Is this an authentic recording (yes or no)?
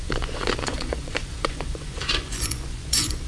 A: no